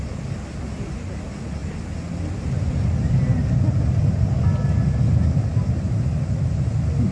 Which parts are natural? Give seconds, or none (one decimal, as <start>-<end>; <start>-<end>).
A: 0.0-7.1